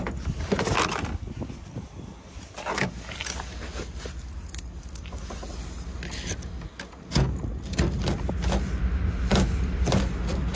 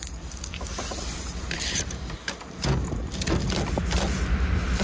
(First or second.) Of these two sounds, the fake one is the second